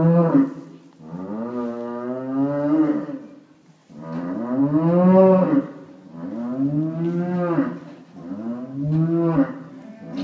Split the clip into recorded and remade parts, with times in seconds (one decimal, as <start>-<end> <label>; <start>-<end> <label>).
0.0-10.2 recorded